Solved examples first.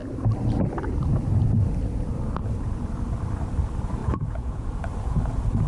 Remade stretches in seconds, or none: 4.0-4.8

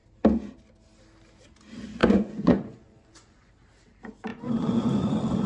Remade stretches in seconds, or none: 2.0-3.5; 4.3-5.1

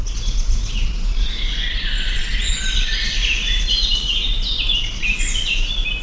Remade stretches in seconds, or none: none

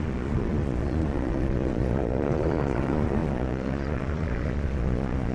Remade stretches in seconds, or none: 0.0-5.3

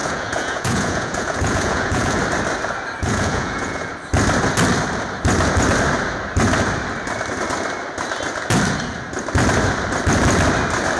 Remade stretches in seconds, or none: 0.0-2.2; 3.0-3.9